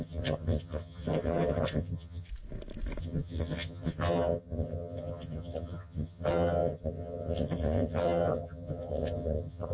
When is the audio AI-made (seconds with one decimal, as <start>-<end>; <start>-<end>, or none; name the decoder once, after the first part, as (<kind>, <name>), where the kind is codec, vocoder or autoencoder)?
0.0-2.3 (vocoder, HiFi-GAN); 3.0-9.7